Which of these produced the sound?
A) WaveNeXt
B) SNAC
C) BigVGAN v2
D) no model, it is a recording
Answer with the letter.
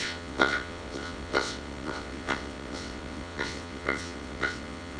A